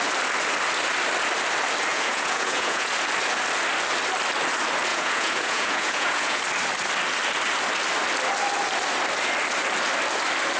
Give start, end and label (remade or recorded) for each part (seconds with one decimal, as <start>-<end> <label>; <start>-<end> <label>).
0.0-1.9 recorded; 1.9-2.9 remade; 2.9-4.9 recorded; 4.9-6.4 remade; 6.4-10.6 recorded